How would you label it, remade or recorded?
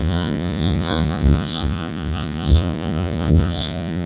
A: remade